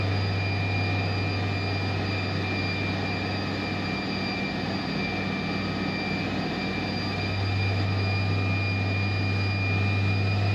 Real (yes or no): yes